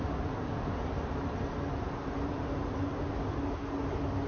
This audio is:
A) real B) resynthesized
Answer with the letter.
A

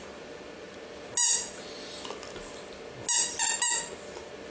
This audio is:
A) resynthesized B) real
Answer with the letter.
B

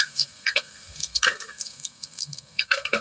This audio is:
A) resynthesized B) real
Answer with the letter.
A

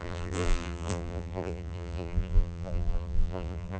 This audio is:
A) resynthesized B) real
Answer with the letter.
A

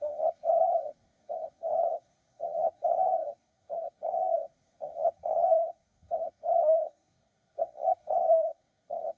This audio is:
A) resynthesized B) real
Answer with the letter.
A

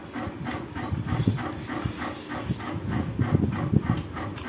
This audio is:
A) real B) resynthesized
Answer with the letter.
A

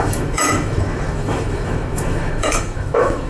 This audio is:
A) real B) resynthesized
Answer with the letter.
B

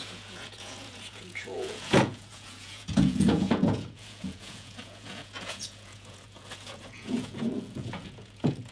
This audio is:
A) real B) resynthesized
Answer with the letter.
B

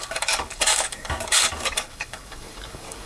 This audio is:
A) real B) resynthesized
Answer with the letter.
B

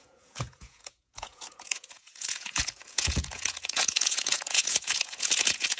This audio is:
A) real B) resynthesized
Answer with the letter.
B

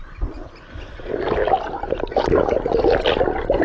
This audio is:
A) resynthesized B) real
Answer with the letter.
B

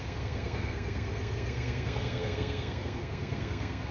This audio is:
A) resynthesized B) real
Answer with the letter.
A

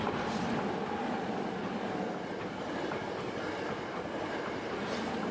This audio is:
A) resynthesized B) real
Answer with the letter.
B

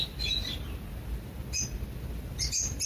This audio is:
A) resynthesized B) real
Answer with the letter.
B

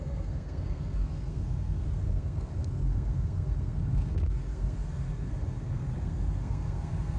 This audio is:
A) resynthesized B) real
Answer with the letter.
A